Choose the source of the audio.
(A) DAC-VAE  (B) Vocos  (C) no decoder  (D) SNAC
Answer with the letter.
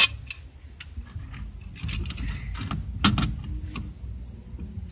C